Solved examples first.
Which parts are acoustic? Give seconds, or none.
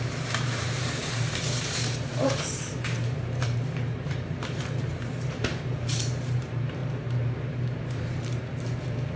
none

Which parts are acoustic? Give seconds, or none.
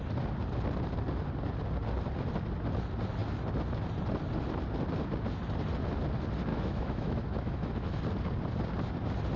0.0-6.5; 8.0-9.4